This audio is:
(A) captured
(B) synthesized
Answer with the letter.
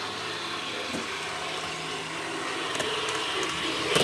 A